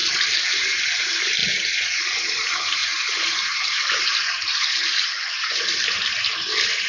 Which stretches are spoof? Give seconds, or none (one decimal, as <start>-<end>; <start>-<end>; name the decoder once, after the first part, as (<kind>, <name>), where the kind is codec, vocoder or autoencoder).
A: 0.0-0.8 (vocoder, BigVGAN v2)